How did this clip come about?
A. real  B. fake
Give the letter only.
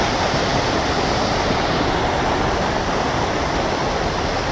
A